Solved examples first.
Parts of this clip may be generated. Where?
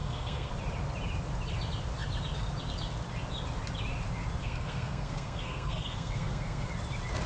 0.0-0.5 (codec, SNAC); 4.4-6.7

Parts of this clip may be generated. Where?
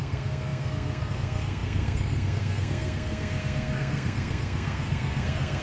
0.0-5.6 (codec, SNAC)